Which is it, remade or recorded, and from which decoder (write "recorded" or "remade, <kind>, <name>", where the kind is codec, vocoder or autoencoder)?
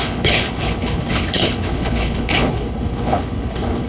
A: remade, codec, HILCodec